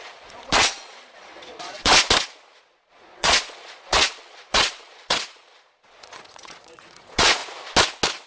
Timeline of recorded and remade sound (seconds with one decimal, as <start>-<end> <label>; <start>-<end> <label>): 0.0-1.9 remade; 1.9-2.6 recorded; 2.6-7.4 remade; 7.4-8.3 recorded